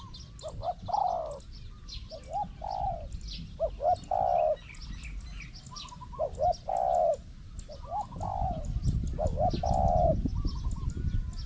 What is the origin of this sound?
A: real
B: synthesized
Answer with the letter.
A